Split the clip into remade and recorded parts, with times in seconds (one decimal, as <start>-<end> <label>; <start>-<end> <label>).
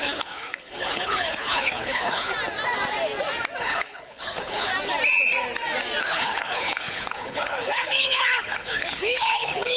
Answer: 0.0-2.3 remade; 2.3-3.6 recorded; 3.6-4.7 remade; 4.7-6.0 recorded; 6.0-9.8 remade